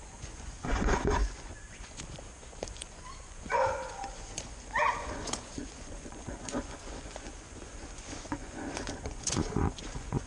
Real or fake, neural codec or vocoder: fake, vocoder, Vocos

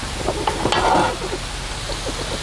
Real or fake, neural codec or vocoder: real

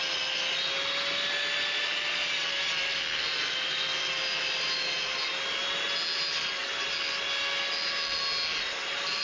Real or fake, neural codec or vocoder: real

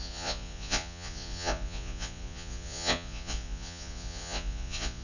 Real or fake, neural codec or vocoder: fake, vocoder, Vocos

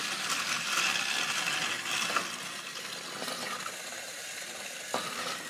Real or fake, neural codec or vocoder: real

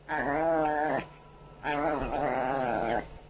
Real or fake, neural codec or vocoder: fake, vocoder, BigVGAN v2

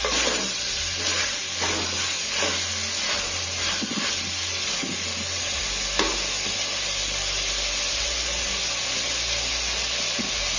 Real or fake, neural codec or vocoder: real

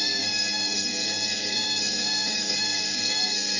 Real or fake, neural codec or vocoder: fake, codec, SNAC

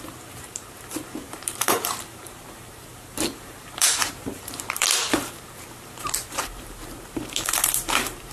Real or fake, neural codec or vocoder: fake, vocoder, BigVGAN v2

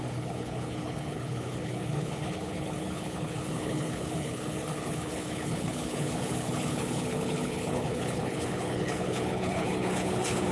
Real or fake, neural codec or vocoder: fake, codec, HILCodec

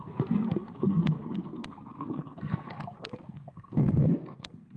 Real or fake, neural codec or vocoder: fake, codec, SNAC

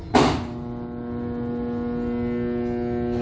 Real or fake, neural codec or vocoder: real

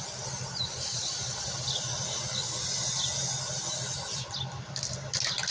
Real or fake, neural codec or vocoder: real